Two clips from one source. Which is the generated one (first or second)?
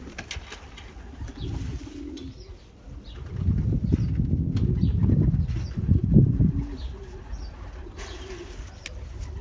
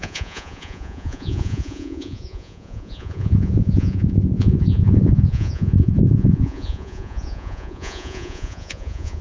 second